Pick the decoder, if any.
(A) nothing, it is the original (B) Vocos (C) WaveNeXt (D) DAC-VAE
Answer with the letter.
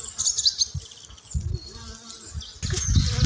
A